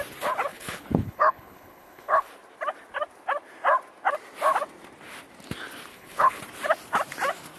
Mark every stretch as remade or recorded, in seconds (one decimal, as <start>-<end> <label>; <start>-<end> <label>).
0.0-0.5 recorded; 0.5-2.3 remade; 2.3-5.9 recorded; 5.9-6.4 remade; 6.4-7.6 recorded